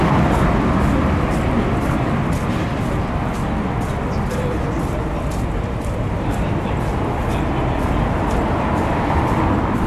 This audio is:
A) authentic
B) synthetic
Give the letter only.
A